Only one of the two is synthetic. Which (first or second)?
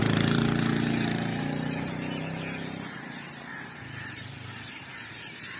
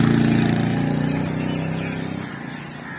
first